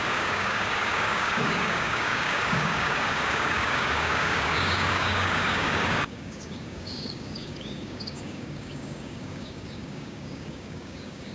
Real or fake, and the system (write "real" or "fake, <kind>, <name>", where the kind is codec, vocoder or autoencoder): fake, codec, DAC